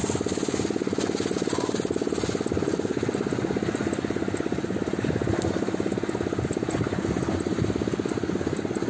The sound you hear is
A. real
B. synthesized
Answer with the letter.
A